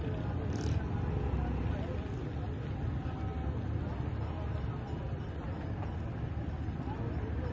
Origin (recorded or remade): recorded